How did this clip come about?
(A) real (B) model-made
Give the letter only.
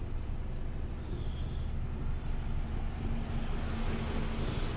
A